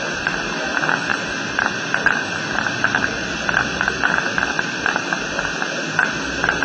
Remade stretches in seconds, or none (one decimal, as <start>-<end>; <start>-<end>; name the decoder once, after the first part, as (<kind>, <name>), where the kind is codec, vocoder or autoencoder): none